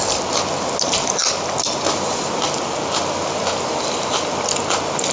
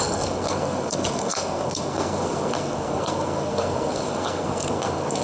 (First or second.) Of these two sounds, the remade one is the second